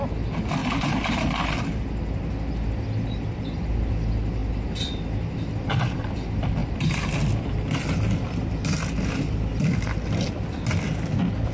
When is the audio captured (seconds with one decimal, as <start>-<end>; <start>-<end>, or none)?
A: 0.0-11.5